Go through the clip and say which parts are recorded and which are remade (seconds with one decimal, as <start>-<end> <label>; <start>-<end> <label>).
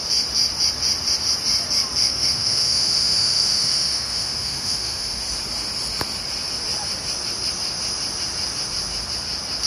0.0-2.0 recorded; 2.0-5.2 remade; 5.2-9.7 recorded